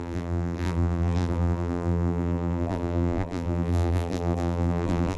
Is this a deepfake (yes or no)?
yes